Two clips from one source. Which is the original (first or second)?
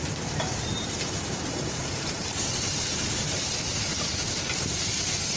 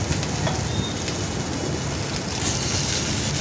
second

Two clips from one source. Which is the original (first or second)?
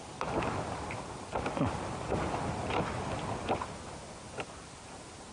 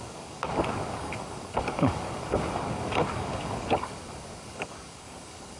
first